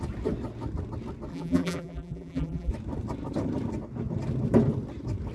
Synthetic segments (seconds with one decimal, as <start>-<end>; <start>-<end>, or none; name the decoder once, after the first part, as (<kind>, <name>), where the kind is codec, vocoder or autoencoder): 1.3-2.7 (vocoder, BigVGAN v2)